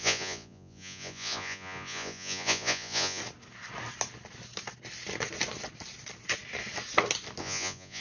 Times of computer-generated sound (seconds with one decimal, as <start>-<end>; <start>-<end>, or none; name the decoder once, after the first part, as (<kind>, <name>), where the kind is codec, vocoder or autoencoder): 0.0-3.2 (vocoder, Vocos); 7.4-8.0